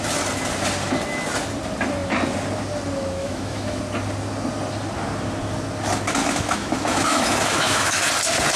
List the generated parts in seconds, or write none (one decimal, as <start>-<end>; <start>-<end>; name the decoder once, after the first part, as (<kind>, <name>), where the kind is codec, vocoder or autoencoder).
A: 3.2-3.8 (autoencoder, DAC-VAE); 6.2-8.1